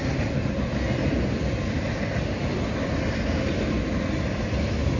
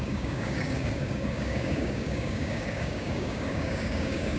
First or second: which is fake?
second